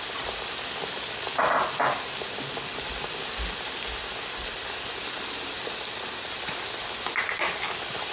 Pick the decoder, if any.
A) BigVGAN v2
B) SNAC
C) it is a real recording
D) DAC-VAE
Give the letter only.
C